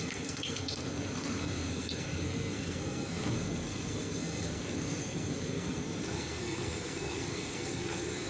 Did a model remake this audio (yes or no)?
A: yes